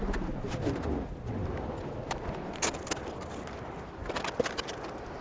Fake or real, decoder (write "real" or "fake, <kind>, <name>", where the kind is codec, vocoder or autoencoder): real